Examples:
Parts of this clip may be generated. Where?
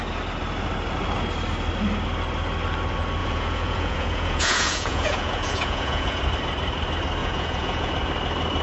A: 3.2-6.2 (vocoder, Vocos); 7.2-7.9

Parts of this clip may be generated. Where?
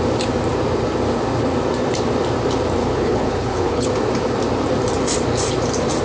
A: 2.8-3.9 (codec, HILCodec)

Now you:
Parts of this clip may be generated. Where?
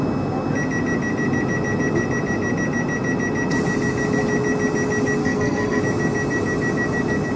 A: 5.2-5.8 (codec, SNAC)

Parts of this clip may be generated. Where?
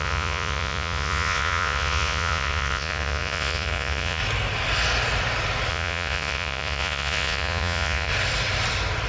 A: 0.0-4.2 (vocoder, Vocos); 5.7-8.1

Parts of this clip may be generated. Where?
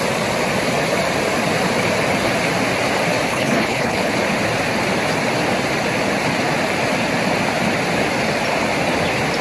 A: 3.3-4.1 (codec, HILCodec)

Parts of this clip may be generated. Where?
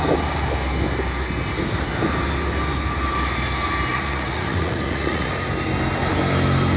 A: 3.9-5.3 (vocoder, Vocos)